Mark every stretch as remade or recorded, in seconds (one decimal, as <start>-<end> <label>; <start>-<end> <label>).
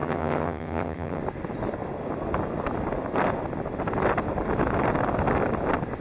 0.0-1.2 remade; 1.2-6.0 recorded